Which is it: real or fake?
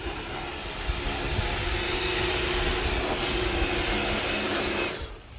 real